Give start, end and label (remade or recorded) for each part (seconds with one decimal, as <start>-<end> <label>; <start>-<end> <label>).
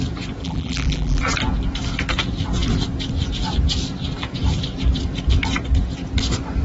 0.0-0.4 recorded; 0.4-1.2 remade; 1.2-6.6 recorded